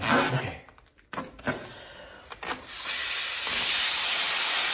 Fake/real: real